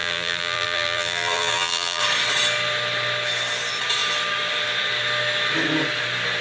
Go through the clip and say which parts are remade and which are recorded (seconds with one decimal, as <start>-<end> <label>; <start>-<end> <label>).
0.0-2.0 remade; 2.0-6.4 recorded